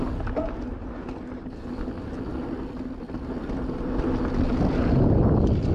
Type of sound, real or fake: real